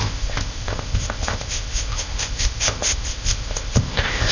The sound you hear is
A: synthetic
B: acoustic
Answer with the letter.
A